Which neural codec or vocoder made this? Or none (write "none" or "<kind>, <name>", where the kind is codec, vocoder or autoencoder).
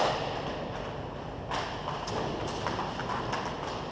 none